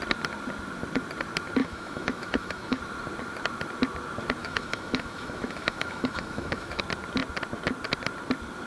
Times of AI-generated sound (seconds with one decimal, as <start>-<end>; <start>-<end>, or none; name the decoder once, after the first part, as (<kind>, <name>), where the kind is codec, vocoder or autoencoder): 1.6-2.8 (autoencoder, DAC-VAE); 4.4-6.8